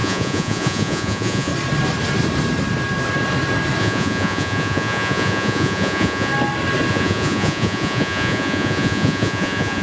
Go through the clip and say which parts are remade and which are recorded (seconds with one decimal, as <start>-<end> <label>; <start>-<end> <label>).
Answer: 0.0-1.5 remade; 1.5-3.8 recorded; 3.8-6.3 remade; 6.3-6.9 recorded; 6.9-9.8 remade